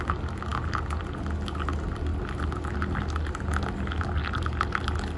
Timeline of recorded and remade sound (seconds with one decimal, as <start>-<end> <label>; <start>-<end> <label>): 0.0-5.2 recorded